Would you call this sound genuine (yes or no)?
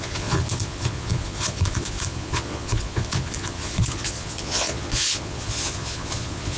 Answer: no